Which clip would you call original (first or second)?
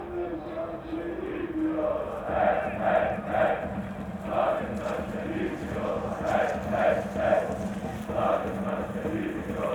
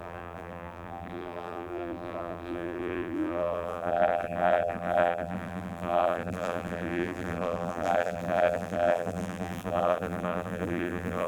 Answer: first